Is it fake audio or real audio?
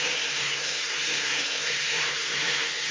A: fake